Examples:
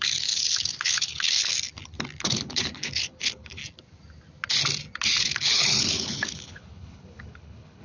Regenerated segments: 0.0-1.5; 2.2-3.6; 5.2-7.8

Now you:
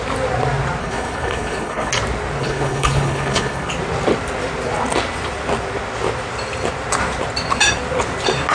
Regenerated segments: 0.8-1.9; 2.4-3.7

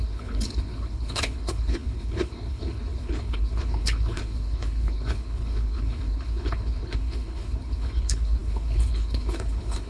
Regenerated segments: 0.0-9.9